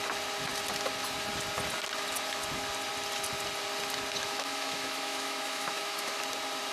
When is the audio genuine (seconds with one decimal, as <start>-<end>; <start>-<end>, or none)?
0.0-4.2; 6.2-6.7